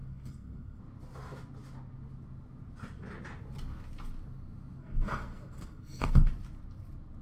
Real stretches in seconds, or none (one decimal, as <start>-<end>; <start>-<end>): 0.8-4.8; 6.3-7.2